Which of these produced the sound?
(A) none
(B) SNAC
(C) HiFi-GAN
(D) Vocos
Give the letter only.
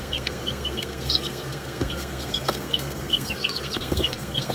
B